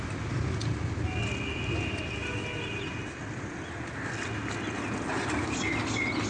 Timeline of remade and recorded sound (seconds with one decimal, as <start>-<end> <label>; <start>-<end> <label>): 0.0-6.3 recorded